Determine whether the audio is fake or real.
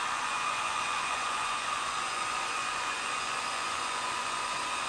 fake